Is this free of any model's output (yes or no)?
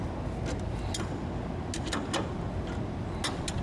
yes